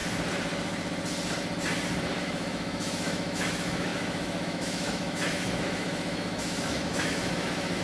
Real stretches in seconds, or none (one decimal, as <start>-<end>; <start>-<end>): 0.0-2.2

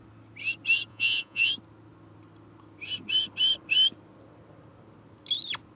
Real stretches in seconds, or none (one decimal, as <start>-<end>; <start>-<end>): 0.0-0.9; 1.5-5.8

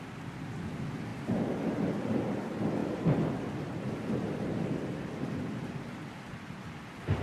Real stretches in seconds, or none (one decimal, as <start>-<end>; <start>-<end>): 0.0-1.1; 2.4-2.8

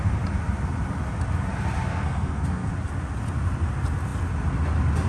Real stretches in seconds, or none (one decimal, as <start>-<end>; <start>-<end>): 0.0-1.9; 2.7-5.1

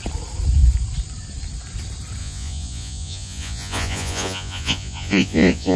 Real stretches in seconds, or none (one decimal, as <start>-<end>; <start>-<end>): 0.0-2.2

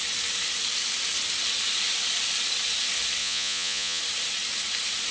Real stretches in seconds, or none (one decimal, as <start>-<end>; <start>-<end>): 0.0-3.2; 4.0-5.1

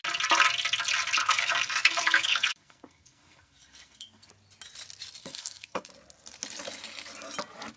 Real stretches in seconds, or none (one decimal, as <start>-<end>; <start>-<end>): 0.0-1.2; 4.3-5.2; 5.9-7.8